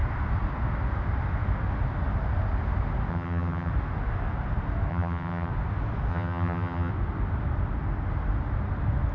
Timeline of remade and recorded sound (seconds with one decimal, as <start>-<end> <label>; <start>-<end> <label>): 0.0-3.1 recorded; 3.1-3.7 remade; 3.7-4.9 recorded; 4.9-5.5 remade; 5.5-6.1 recorded; 6.1-6.9 remade; 6.9-9.1 recorded